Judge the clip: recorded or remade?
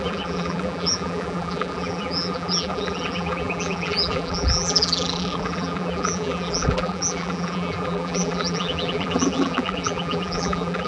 remade